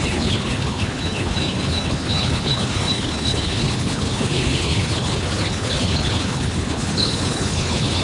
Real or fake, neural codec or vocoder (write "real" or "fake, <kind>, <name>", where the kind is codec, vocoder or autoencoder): fake, codec, HILCodec